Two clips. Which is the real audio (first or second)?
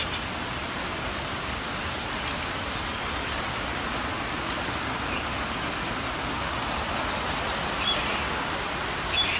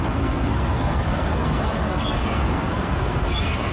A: first